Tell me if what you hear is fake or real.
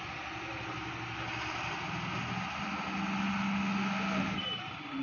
real